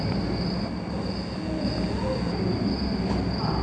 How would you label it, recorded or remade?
recorded